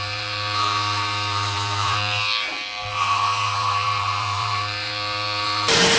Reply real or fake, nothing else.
fake